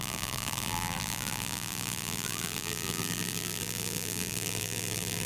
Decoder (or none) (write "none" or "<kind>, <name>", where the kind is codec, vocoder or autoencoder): vocoder, BigVGAN v2